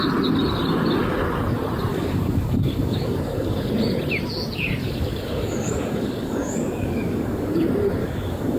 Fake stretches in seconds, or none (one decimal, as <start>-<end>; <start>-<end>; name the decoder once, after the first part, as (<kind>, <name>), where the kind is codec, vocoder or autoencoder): 1.9-3.7 (codec, DAC); 4.8-7.6; 8.0-8.6

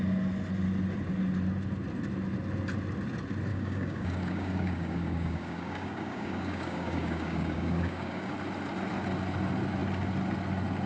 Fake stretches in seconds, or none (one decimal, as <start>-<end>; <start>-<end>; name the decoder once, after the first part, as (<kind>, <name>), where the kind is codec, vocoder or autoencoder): 3.5-8.3 (codec, DAC)

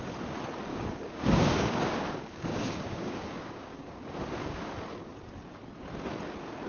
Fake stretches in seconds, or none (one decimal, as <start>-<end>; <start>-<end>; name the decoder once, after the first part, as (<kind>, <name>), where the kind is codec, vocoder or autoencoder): 0.7-4.6 (codec, DAC)

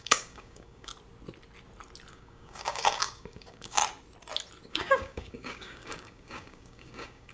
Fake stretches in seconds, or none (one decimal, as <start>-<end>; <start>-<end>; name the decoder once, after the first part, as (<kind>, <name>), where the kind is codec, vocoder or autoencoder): 0.0-0.9 (codec, DAC); 2.1-3.8; 4.7-7.3